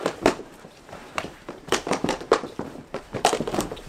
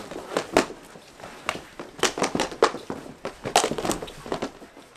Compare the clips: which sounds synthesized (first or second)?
first